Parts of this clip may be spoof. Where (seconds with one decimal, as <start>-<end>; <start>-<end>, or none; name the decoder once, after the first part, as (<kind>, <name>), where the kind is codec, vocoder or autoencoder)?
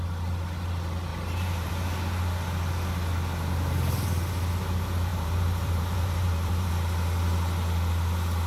1.1-1.7 (vocoder, BigVGAN v2); 5.1-6.7